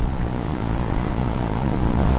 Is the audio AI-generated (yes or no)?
yes